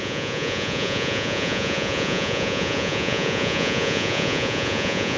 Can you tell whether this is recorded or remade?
remade